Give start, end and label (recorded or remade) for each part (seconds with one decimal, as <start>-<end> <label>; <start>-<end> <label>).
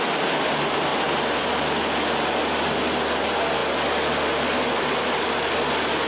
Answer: 0.0-6.1 recorded